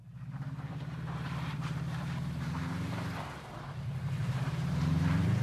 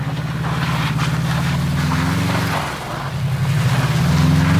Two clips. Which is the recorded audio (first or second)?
second